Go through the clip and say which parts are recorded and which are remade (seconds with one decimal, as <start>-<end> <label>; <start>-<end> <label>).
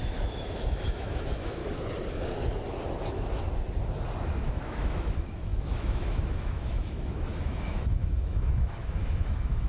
0.0-1.6 remade; 1.6-4.5 recorded; 4.5-9.7 remade